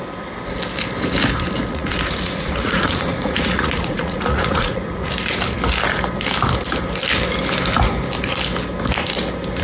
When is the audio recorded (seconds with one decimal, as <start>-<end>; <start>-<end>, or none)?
0.0-1.7; 5.1-9.6